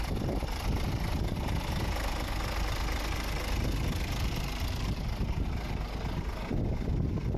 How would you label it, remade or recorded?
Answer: recorded